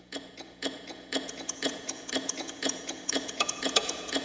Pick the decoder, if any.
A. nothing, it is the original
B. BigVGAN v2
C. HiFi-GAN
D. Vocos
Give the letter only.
D